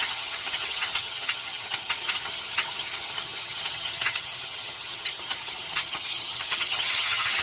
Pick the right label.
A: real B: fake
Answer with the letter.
B